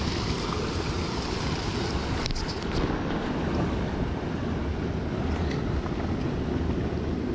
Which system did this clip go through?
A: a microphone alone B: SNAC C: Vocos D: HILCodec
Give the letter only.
A